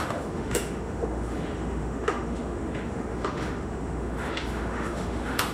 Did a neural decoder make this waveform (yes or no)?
yes